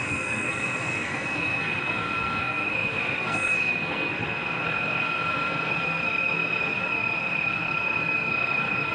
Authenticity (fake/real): fake